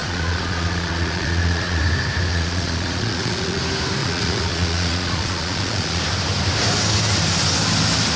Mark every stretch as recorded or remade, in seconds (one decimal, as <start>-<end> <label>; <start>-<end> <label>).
0.0-1.8 remade; 1.8-2.3 recorded; 2.3-3.6 remade; 3.6-4.0 recorded; 4.0-6.0 remade; 6.0-8.2 recorded